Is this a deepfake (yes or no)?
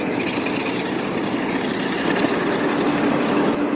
no